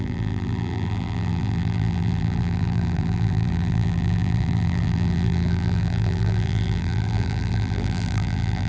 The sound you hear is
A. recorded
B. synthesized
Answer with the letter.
B